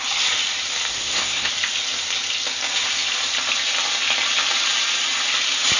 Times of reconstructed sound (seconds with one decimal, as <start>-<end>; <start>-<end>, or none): 0.9-1.5